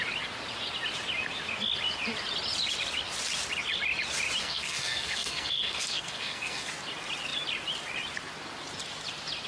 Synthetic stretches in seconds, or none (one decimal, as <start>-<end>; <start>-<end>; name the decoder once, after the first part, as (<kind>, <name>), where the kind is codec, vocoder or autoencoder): 4.4-6.7 (codec, SNAC)